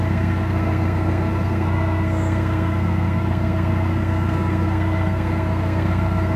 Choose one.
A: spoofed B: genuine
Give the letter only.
A